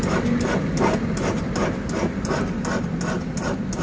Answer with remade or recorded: recorded